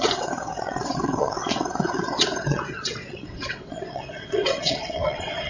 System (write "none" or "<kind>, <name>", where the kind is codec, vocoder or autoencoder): vocoder, WaveNeXt